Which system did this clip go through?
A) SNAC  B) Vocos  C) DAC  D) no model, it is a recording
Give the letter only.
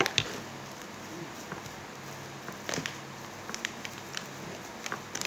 D